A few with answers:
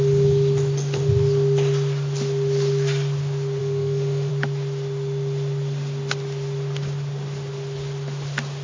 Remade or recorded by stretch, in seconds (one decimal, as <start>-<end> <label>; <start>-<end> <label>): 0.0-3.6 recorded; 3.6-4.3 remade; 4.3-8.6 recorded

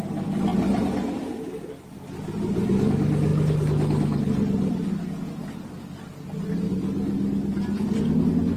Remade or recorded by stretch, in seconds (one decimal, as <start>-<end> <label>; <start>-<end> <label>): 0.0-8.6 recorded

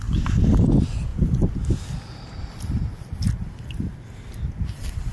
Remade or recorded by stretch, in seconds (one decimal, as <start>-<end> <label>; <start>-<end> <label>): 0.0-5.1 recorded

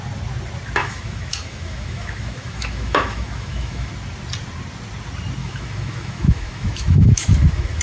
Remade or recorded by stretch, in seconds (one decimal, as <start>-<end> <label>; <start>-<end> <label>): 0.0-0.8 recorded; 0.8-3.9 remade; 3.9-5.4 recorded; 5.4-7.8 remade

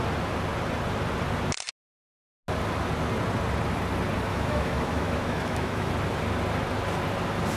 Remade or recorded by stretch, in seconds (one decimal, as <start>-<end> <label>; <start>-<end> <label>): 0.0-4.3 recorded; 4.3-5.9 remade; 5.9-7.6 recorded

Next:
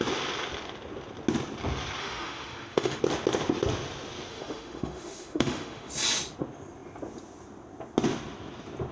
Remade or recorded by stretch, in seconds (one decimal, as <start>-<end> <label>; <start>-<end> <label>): 0.0-2.0 recorded; 2.0-3.0 remade; 3.0-4.3 recorded; 4.3-5.9 remade; 5.9-8.9 recorded

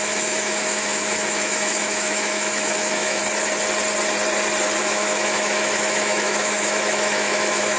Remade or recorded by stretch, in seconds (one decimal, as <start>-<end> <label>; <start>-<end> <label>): 0.0-3.2 remade; 3.2-4.8 recorded; 4.8-7.8 remade

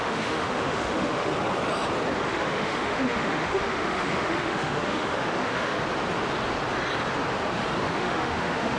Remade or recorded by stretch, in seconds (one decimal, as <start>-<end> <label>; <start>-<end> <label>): 0.0-1.3 remade; 1.3-2.3 recorded; 2.3-5.8 remade; 5.8-7.8 recorded; 7.8-8.8 remade